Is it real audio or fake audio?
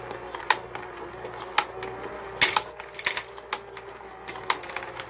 real